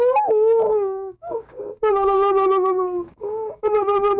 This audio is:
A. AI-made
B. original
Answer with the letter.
A